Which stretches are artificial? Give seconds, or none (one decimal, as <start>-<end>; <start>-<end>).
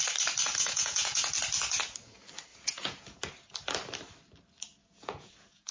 0.5-1.3; 2.5-3.2; 4.8-5.7